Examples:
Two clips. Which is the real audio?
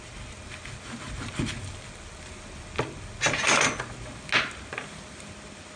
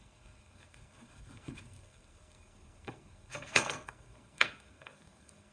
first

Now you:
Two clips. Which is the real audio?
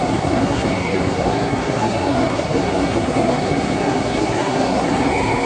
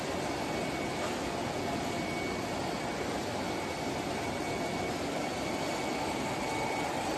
second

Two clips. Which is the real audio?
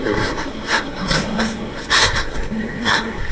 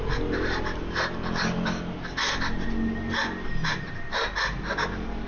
second